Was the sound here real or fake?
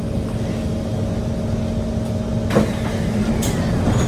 real